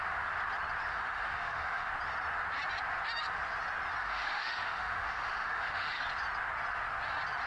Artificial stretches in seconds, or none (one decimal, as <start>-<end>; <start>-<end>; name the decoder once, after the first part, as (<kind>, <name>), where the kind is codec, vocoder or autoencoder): 0.9-1.9 (autoencoder, DAC-VAE); 4.0-6.0